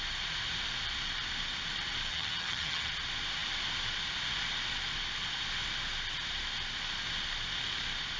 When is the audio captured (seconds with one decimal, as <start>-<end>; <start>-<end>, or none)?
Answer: 0.0-2.1; 2.9-8.2